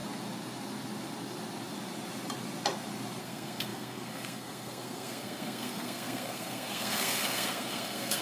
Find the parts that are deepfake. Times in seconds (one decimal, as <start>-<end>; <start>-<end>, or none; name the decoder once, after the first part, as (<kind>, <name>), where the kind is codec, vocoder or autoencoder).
3.2-8.2 (codec, SNAC)

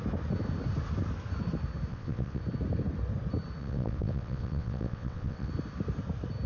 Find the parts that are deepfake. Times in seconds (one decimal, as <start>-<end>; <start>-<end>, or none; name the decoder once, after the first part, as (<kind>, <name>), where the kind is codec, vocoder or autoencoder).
1.9-2.4 (vocoder, WaveNeXt); 3.6-5.5

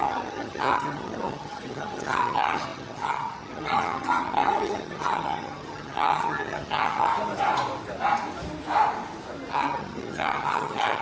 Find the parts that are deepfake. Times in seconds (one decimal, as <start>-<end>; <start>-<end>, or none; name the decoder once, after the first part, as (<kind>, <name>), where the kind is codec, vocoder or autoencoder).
0.0-7.1 (vocoder, HiFi-GAN); 9.5-11.0

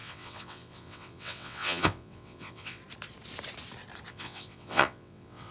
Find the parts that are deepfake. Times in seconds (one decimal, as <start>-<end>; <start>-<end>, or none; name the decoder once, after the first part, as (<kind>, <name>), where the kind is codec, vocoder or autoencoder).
0.0-2.8 (vocoder, WaveNeXt); 4.1-5.5

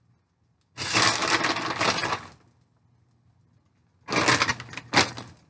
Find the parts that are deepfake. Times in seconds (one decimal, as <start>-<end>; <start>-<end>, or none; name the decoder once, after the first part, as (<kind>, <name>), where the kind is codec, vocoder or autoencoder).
none

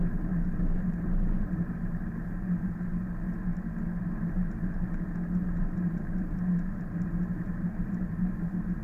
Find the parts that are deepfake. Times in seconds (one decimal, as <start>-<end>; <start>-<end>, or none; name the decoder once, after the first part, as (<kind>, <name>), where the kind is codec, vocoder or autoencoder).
0.0-2.9 (vocoder, BigVGAN v2); 4.1-8.8

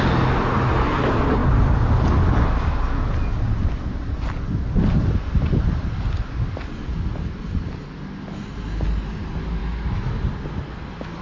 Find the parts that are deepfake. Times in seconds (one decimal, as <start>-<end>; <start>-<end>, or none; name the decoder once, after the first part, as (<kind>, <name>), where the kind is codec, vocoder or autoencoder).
9.6-10.3 (autoencoder, DAC-VAE)